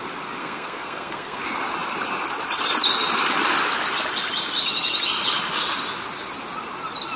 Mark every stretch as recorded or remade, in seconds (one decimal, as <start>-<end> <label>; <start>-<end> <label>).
0.0-0.4 recorded; 0.4-1.4 remade; 1.4-7.2 recorded